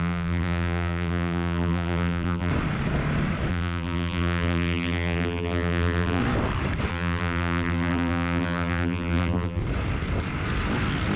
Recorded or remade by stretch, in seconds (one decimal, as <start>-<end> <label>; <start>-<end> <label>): 0.0-2.5 remade; 2.5-3.5 recorded; 3.5-6.2 remade; 6.2-6.9 recorded; 6.9-9.6 remade; 9.6-11.2 recorded